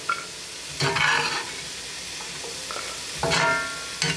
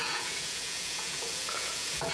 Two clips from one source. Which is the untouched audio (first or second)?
first